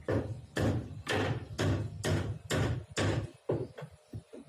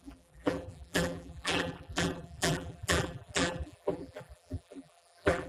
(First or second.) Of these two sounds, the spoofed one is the second